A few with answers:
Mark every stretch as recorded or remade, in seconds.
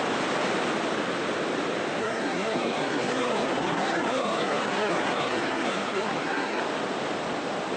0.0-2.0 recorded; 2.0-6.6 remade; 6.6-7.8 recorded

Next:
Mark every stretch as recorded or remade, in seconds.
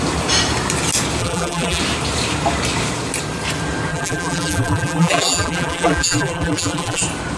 0.0-1.2 recorded; 1.2-1.8 remade; 1.8-3.9 recorded; 3.9-7.0 remade; 7.0-7.4 recorded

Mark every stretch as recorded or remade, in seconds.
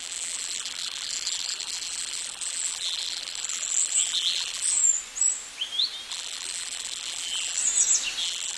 0.0-4.8 remade; 4.8-6.1 recorded; 6.1-7.6 remade; 7.6-8.2 recorded; 8.2-8.6 remade